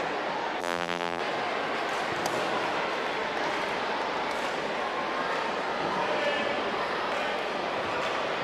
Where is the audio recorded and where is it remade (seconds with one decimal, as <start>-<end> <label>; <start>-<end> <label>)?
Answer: 0.0-0.6 recorded; 0.6-1.2 remade; 1.2-8.4 recorded